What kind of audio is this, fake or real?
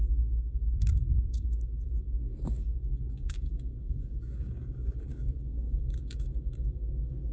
fake